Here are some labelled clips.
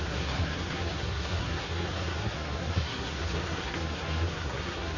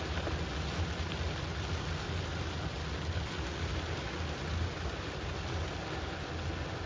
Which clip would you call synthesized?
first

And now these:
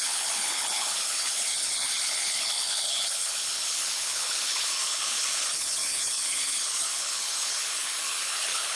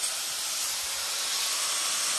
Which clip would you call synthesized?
first